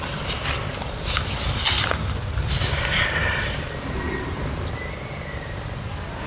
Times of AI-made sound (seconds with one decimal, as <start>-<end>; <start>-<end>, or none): none